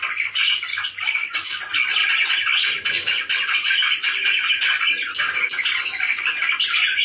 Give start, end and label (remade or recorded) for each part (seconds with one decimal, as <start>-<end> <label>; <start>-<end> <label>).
0.0-0.7 recorded; 0.7-1.6 remade; 1.6-7.0 recorded